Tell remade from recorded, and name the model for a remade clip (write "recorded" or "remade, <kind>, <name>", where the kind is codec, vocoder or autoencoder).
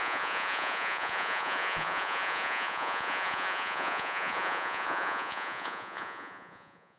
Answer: remade, vocoder, Vocos